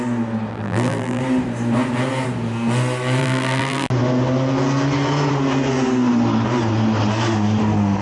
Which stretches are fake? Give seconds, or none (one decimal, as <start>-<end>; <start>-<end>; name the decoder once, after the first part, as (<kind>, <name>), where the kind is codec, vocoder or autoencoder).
0.5-1.2 (vocoder, BigVGAN v2); 3.2-3.9